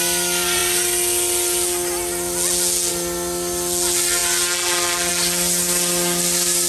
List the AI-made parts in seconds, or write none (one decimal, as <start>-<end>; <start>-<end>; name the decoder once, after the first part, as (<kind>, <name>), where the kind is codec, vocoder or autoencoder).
none